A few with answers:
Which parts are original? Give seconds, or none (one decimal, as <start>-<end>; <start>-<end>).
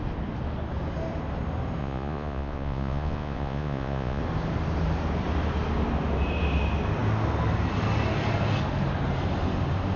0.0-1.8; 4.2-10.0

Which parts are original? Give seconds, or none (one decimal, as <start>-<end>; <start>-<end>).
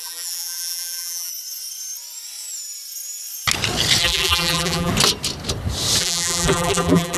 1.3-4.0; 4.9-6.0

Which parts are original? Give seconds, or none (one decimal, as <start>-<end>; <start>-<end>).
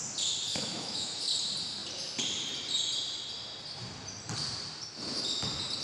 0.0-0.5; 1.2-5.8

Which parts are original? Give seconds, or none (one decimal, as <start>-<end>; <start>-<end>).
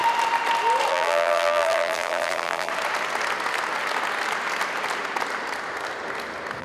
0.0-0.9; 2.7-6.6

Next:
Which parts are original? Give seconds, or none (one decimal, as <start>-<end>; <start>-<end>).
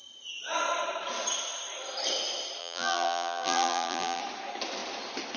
0.0-2.6; 4.2-5.4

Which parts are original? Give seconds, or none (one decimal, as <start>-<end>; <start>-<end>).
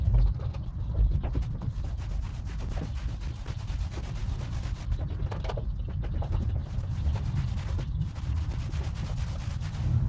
0.0-10.1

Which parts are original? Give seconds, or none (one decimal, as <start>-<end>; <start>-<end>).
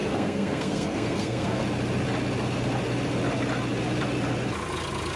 1.6-5.2